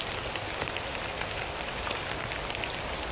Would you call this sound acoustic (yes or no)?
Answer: yes